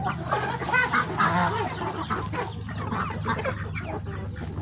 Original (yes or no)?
yes